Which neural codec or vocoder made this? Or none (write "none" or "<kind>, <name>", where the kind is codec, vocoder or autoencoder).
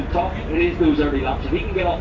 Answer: none